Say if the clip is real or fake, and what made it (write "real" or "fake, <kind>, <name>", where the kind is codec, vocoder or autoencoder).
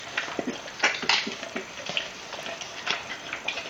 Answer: real